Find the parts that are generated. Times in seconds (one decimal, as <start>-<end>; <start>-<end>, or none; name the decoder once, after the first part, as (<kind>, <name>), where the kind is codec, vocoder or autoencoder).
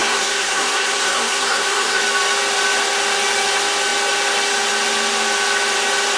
0.0-2.0 (codec, SNAC)